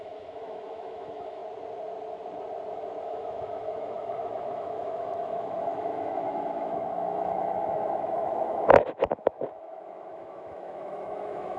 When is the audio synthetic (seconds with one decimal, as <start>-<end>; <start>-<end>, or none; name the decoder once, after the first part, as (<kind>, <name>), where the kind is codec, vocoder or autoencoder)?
0.0-1.4 (autoencoder, DAC-VAE); 3.0-11.6